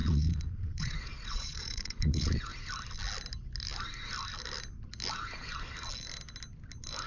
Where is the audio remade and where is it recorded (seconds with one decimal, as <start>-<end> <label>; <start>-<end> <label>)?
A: 0.0-2.5 remade; 2.5-7.1 recorded